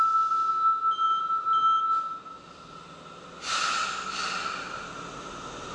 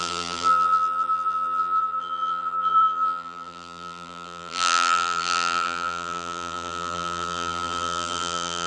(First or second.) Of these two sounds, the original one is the first